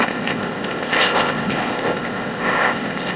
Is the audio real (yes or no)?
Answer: no